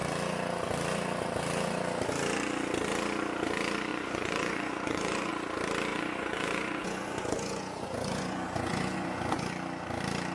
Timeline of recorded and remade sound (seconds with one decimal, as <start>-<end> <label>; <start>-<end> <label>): 0.0-3.9 recorded; 3.9-5.3 remade; 5.3-5.9 recorded; 5.9-9.5 remade; 9.5-10.3 recorded